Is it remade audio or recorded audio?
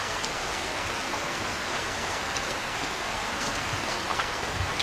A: remade